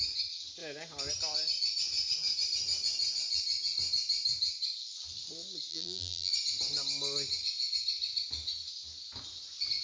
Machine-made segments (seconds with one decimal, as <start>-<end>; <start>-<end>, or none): 5.7-6.3